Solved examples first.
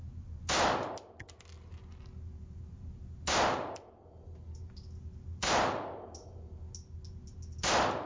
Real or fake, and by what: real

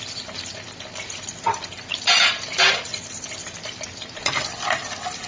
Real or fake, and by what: fake, vocoder, BigVGAN v2